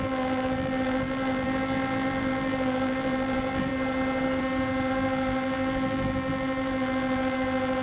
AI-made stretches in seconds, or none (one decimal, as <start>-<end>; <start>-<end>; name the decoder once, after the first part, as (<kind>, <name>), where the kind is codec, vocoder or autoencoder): 0.0-3.7 (vocoder, BigVGAN v2); 4.9-7.8